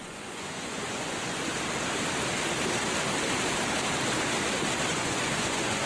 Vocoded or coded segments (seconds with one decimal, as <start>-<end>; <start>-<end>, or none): 0.0-1.4; 4.9-5.9